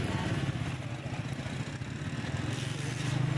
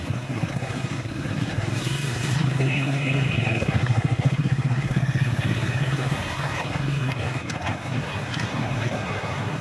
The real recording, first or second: first